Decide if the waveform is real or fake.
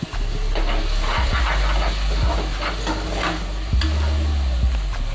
real